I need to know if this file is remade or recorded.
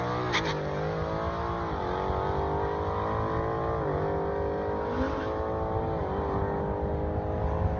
recorded